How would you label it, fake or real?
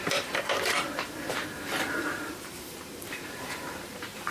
fake